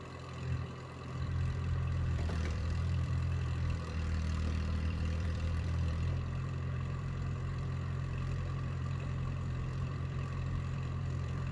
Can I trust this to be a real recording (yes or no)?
no